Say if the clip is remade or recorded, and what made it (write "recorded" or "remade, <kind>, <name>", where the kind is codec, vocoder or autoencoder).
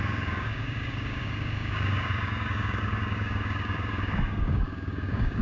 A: remade, codec, DAC